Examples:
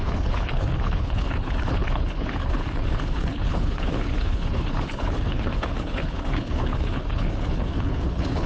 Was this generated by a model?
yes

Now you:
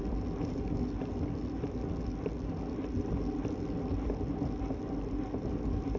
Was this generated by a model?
no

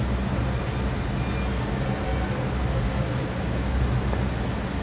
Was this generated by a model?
no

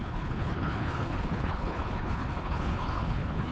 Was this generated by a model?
yes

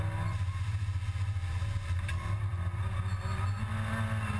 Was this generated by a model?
no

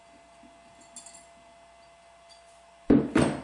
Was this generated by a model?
no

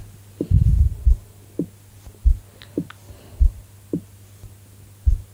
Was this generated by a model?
no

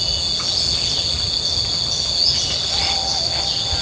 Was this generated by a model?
no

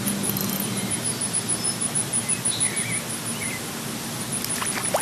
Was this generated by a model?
no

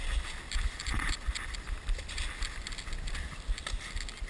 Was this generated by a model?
no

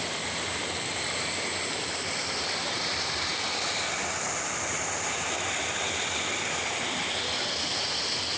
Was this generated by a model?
no